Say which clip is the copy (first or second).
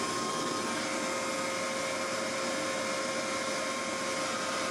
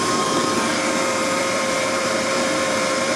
second